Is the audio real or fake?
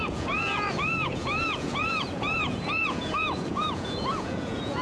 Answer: fake